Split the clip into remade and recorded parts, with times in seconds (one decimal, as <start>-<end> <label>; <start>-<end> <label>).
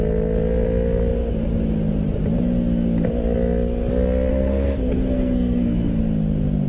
0.0-4.3 recorded; 4.3-6.0 remade; 6.0-6.7 recorded